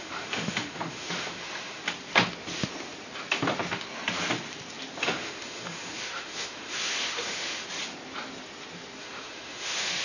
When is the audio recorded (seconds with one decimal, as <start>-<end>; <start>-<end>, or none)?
1.8-5.0; 7.6-9.0